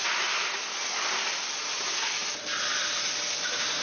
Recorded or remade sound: recorded